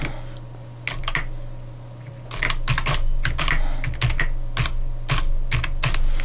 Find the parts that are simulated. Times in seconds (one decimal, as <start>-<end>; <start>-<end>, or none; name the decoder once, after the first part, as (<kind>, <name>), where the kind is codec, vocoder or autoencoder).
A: none